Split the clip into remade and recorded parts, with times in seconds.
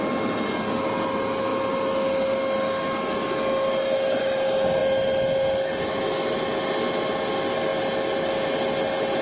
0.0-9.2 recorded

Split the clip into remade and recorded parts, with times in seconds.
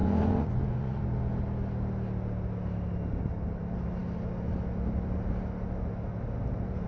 0.0-1.0 remade; 1.0-6.9 recorded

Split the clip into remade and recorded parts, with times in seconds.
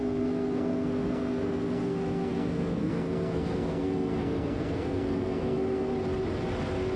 0.0-5.9 remade; 5.9-7.0 recorded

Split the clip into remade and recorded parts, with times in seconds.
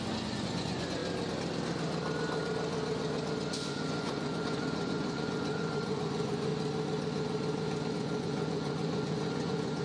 0.0-1.0 remade; 1.0-3.5 recorded; 3.5-6.5 remade; 6.5-7.9 recorded; 7.9-9.8 remade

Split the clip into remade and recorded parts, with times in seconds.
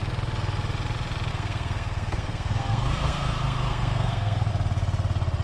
0.0-1.3 recorded; 1.3-4.5 remade; 4.5-5.4 recorded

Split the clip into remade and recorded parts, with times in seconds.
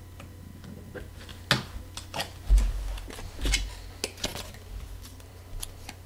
0.0-6.1 recorded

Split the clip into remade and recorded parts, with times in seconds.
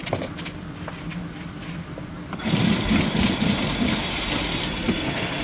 0.0-5.4 recorded